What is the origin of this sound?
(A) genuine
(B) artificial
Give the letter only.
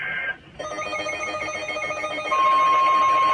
A